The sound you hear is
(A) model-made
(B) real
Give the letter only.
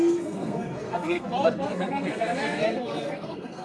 A